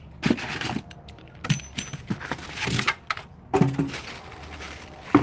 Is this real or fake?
real